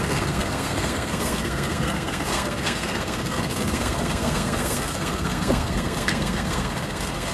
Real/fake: fake